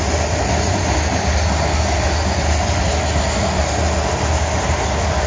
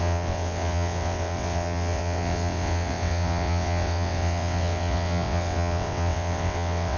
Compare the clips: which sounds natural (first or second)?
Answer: first